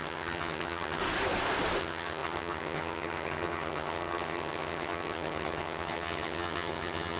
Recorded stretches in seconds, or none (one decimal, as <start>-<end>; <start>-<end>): 1.0-1.8